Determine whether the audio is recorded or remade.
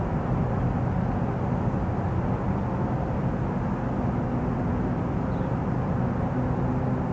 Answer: recorded